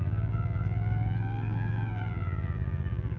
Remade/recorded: remade